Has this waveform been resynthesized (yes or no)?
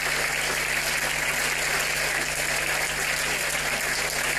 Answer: no